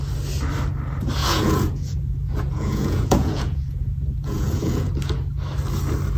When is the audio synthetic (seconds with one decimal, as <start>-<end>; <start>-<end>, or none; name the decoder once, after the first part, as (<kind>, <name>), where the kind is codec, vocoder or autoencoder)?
1.2-4.9 (vocoder, Vocos)